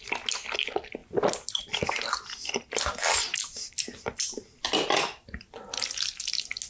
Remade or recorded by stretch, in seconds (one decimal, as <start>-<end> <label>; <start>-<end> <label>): 0.0-6.7 recorded